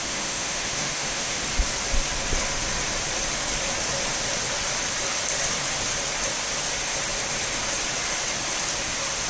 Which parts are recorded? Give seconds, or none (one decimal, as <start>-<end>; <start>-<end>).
1.4-9.3